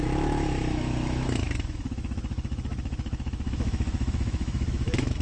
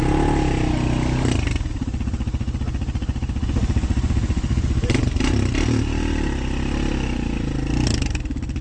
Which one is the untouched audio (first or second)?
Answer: second